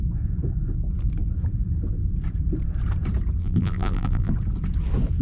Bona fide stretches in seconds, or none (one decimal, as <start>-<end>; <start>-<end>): 0.0-3.4; 4.3-5.2